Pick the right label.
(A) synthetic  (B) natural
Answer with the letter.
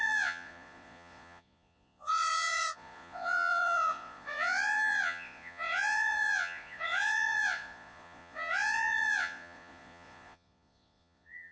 A